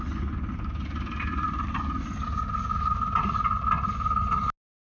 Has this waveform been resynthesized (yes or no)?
no